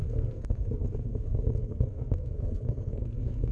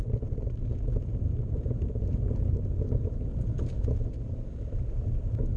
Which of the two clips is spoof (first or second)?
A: first